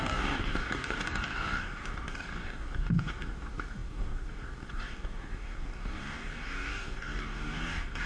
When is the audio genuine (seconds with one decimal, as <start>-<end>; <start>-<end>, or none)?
none